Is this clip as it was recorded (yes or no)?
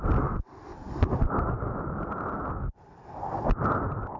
yes